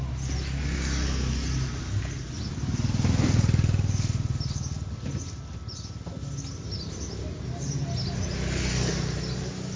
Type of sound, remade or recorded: recorded